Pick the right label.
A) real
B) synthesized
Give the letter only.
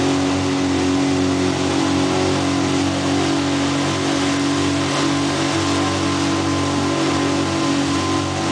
A